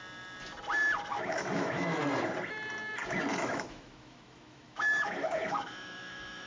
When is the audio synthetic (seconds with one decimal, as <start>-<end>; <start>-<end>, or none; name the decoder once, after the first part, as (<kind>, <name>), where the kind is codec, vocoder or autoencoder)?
1.1-2.0 (autoencoder, DAC-VAE); 3.3-6.5